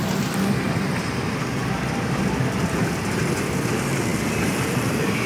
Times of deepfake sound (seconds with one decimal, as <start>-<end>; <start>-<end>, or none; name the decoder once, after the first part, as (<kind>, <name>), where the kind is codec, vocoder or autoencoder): 0.0-5.3 (vocoder, BigVGAN v2)